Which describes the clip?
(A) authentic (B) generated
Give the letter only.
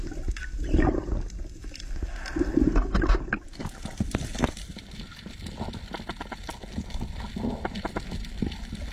A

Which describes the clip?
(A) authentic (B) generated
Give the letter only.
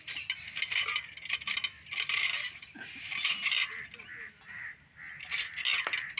A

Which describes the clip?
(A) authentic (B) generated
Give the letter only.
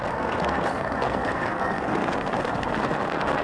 B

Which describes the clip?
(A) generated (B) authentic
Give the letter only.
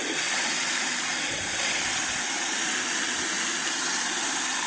B